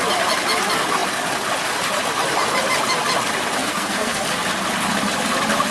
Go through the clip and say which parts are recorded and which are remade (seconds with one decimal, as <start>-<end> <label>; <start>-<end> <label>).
0.0-3.6 recorded; 3.6-4.2 remade; 4.2-5.7 recorded